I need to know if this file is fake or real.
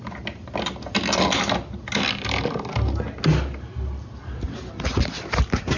real